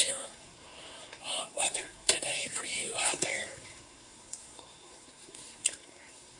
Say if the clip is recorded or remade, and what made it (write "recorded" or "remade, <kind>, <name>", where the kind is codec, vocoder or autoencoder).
remade, codec, SNAC